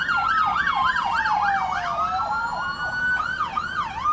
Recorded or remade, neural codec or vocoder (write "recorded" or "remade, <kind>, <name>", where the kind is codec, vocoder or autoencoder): recorded